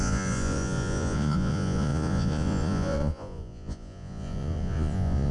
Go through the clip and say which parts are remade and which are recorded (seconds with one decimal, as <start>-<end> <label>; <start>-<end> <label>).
0.0-5.3 remade